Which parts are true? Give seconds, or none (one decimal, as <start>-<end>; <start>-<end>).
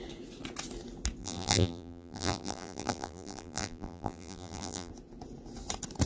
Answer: 0.0-1.2; 4.9-6.1